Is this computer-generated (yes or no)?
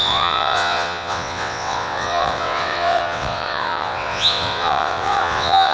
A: yes